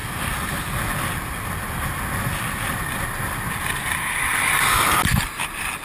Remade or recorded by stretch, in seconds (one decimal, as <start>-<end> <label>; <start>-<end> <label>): 0.0-5.8 recorded